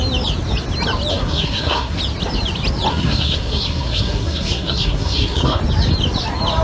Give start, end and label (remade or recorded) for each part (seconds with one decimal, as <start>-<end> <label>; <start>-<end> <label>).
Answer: 0.0-1.1 recorded; 1.1-2.0 remade; 2.0-2.9 recorded; 2.9-5.6 remade; 5.6-6.6 recorded

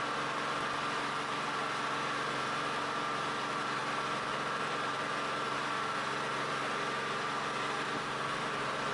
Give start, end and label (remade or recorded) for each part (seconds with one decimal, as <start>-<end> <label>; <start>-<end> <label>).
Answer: 0.0-8.9 recorded

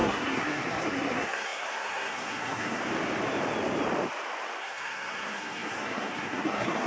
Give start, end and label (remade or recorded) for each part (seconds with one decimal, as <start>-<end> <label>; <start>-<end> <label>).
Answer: 0.0-2.8 remade; 2.8-4.6 recorded; 4.6-6.9 remade